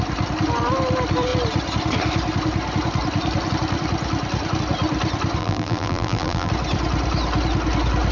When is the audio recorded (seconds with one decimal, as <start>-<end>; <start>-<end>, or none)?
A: 0.0-5.4; 6.5-8.1